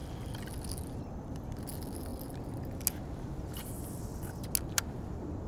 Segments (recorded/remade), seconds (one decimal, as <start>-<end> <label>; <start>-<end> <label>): 0.0-5.5 recorded